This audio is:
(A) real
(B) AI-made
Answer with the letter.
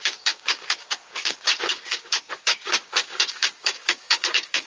B